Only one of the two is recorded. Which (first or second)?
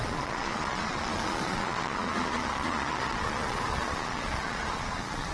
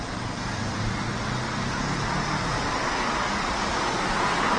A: second